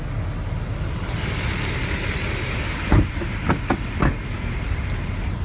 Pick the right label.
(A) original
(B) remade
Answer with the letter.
A